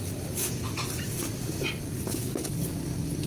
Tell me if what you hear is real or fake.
real